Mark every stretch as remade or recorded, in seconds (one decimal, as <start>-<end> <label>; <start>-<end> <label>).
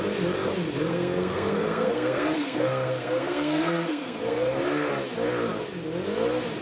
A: 0.0-0.9 recorded; 0.9-4.9 remade; 4.9-6.6 recorded